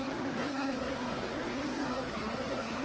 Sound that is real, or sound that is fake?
fake